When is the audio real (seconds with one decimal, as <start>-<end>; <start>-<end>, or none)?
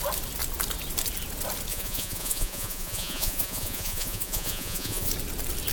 0.0-1.7; 5.1-5.7